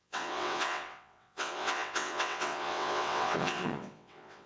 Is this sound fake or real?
fake